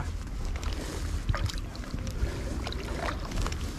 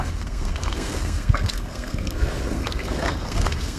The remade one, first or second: second